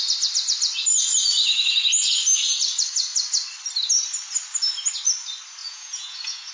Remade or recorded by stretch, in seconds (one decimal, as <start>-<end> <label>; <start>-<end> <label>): 0.0-5.6 recorded; 5.6-6.5 remade